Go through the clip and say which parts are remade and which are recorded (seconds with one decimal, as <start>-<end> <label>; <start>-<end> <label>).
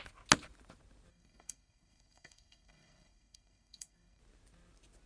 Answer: 0.0-1.1 recorded; 1.1-4.2 remade; 4.2-5.1 recorded